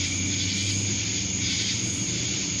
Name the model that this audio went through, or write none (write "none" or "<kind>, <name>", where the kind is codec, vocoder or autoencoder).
none